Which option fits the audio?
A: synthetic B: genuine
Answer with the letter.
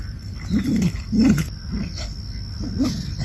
B